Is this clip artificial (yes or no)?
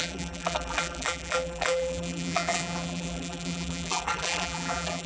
yes